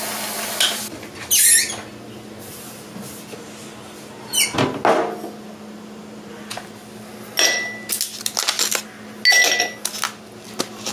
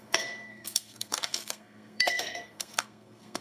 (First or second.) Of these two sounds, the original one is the first